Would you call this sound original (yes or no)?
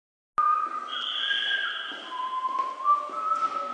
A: yes